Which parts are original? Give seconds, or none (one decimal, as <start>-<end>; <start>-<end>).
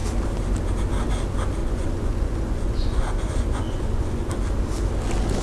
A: 0.0-1.6; 4.3-5.4